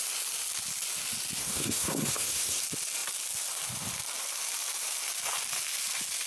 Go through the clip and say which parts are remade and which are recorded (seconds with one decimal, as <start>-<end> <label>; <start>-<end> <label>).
0.0-1.4 recorded; 1.4-2.6 remade; 2.6-6.3 recorded